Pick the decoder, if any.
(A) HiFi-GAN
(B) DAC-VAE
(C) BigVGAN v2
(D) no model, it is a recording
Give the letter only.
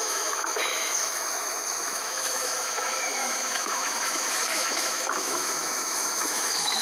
B